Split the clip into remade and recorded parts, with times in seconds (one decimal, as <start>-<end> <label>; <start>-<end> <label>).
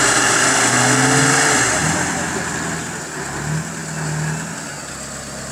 0.0-1.8 recorded; 1.8-3.0 remade; 3.0-5.5 recorded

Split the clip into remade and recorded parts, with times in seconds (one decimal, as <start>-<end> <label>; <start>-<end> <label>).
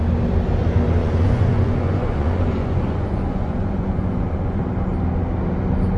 0.0-1.0 recorded; 1.0-4.6 remade; 4.6-6.0 recorded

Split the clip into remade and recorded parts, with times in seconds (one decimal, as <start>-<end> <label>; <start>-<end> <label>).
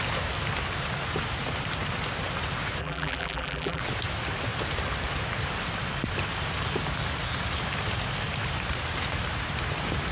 0.0-2.8 recorded; 2.8-3.8 remade; 3.8-10.1 recorded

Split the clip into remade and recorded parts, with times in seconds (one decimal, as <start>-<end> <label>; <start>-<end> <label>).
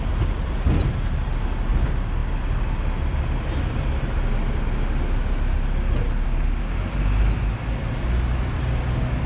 0.0-9.3 recorded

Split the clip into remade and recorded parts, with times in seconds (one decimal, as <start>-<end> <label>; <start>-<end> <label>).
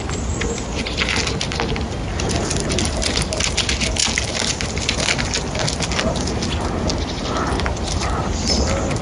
0.0-9.0 recorded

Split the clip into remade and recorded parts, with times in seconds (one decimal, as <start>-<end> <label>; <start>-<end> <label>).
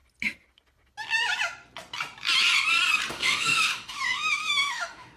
0.0-3.1 recorded; 3.1-5.2 remade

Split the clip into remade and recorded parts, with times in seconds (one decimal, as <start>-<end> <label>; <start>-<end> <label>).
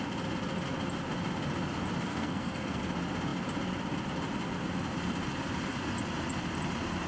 0.0-2.1 recorded; 2.1-2.8 remade; 2.8-7.1 recorded